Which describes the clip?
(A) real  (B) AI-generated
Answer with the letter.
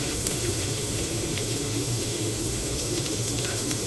B